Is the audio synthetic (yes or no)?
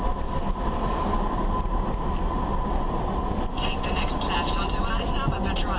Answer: yes